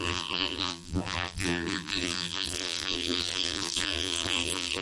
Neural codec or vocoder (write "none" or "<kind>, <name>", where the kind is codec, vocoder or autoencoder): vocoder, BigVGAN v2